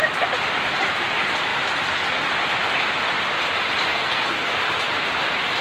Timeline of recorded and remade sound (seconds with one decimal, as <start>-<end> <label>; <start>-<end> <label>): 0.0-3.9 recorded; 3.9-4.5 remade; 4.5-5.6 recorded